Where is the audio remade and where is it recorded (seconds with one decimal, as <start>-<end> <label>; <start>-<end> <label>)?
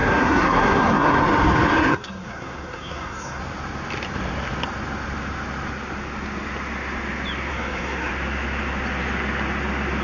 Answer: 0.0-1.2 remade; 1.2-1.8 recorded; 1.8-3.4 remade; 3.4-7.5 recorded; 7.5-8.1 remade; 8.1-10.0 recorded